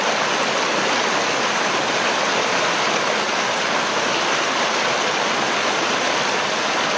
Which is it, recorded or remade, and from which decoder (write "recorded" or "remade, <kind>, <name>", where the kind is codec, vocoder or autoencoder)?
recorded